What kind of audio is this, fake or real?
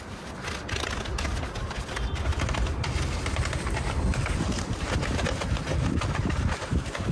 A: real